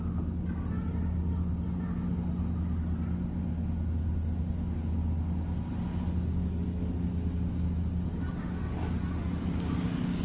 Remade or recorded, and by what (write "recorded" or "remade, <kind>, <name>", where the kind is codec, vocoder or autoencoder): recorded